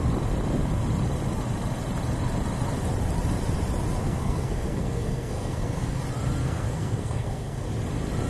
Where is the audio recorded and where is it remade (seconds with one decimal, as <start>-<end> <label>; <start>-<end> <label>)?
0.0-4.0 recorded; 4.0-6.0 remade; 6.0-6.4 recorded; 6.4-7.7 remade; 7.7-8.3 recorded